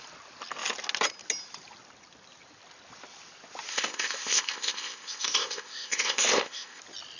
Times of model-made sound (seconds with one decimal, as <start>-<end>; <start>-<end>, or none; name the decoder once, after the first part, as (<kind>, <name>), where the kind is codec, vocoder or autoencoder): 3.7-6.8 (codec, ZipCodec)